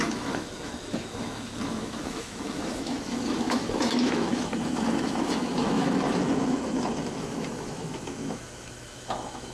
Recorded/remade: remade